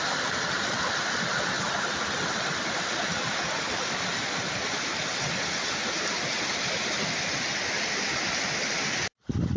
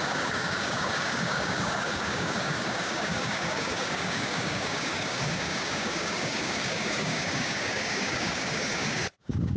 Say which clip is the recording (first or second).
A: first